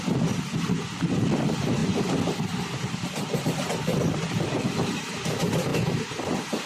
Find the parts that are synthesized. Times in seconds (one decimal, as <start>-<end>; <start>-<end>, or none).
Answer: none